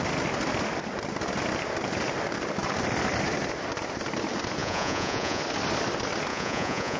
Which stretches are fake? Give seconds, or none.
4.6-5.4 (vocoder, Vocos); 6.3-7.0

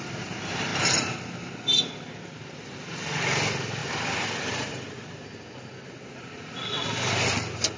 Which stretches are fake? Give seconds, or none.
none

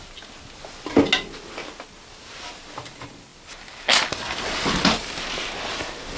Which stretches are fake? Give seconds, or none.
none

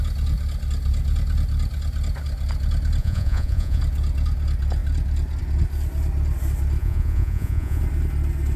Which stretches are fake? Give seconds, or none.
3.0-3.8 (vocoder, Vocos); 6.8-7.8

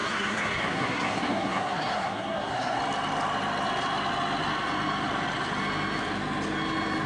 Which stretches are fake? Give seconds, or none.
0.0-2.8 (codec, SNAC)

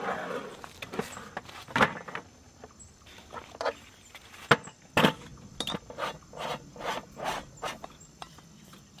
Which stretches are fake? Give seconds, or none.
none

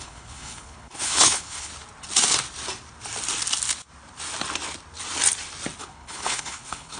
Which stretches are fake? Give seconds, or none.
0.0-1.7 (codec, HILCodec); 5.8-7.0